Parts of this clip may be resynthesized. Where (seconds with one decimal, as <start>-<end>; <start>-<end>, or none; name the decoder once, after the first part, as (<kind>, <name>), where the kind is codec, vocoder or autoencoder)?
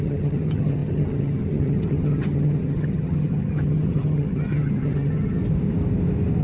0.0-5.4 (vocoder, HiFi-GAN)